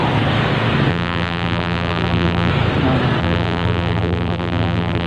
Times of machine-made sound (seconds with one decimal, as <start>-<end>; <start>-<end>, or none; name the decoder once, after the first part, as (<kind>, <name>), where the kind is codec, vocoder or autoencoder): 0.9-2.5 (vocoder, BigVGAN v2); 3.2-5.1